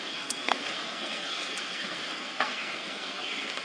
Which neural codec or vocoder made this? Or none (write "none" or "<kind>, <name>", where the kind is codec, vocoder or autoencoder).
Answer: codec, SNAC